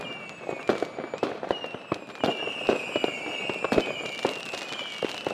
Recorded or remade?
recorded